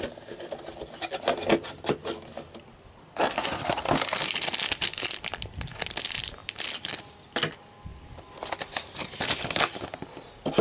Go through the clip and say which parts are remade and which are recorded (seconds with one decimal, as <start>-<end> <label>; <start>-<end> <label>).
0.0-6.4 recorded; 6.4-7.1 remade; 7.1-10.6 recorded